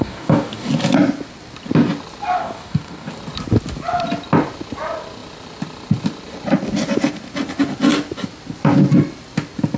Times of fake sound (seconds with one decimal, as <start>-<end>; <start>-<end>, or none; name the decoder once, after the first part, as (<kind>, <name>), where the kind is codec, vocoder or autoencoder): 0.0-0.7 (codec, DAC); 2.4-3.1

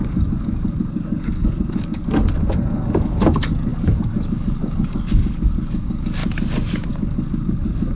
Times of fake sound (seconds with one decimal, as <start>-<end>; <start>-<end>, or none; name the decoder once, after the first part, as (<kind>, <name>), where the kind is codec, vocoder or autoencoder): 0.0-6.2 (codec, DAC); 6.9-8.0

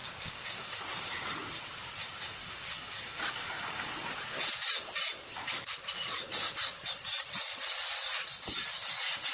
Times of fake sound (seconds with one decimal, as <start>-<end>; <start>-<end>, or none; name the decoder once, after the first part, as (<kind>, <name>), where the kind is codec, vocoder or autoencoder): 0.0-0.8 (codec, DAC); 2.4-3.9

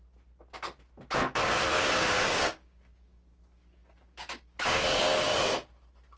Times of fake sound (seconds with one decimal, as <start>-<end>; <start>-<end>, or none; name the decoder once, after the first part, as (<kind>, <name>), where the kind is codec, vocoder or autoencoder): 1.7-5.4 (codec, DAC)